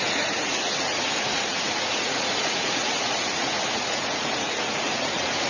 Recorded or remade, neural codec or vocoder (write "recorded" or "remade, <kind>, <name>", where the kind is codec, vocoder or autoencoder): remade, vocoder, Vocos